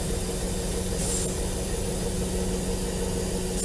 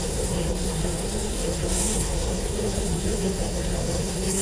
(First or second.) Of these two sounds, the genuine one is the first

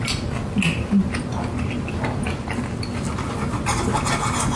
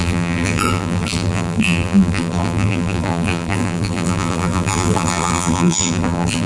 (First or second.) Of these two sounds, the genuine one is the first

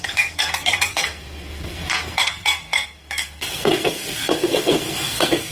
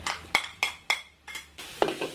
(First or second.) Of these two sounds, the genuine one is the second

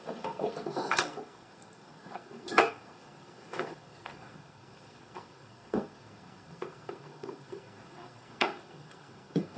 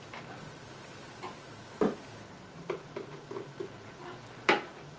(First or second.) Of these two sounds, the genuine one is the second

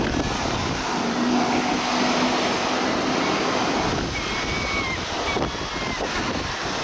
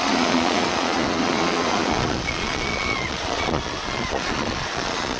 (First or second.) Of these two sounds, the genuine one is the first